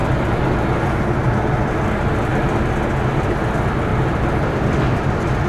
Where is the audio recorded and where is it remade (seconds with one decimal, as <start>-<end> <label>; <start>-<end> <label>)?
0.0-3.9 recorded; 3.9-5.1 remade; 5.1-5.5 recorded